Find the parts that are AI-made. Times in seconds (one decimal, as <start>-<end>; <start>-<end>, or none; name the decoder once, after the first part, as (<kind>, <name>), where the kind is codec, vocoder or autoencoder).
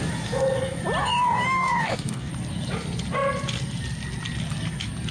1.0-2.3 (codec, DAC)